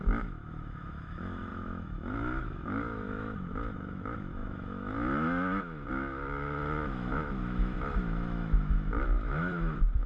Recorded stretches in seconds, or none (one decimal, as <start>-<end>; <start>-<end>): none